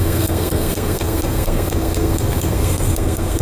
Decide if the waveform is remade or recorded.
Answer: remade